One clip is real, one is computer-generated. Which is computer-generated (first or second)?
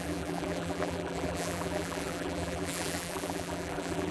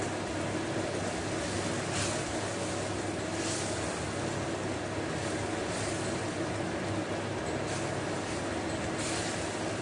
first